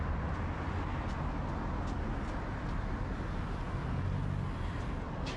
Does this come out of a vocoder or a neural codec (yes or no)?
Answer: no